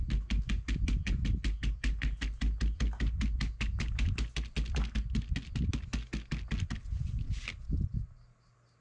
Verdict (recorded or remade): recorded